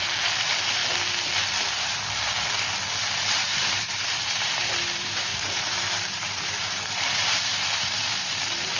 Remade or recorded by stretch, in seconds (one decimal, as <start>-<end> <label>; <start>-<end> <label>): 0.0-0.8 remade; 0.8-2.9 recorded; 2.9-8.8 remade